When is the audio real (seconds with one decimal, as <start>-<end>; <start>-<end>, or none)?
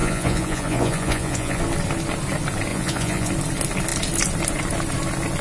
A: 1.6-2.7; 3.3-5.4